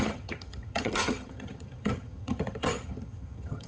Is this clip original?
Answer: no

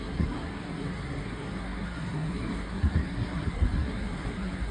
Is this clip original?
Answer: no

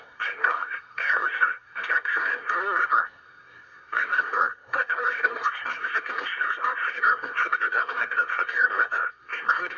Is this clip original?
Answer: no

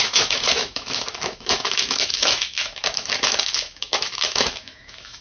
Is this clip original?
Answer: no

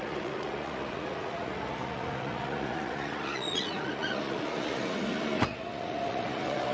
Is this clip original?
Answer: no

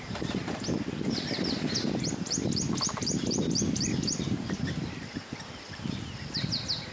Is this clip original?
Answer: yes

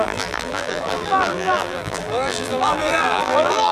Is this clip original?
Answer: no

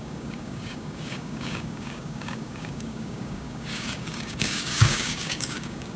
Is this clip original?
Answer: no